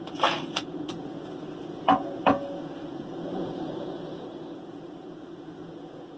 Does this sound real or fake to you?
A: fake